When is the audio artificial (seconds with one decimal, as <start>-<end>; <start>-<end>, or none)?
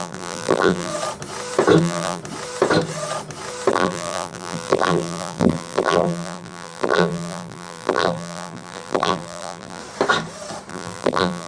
0.0-0.9; 1.8-2.2; 3.7-9.8; 10.7-11.5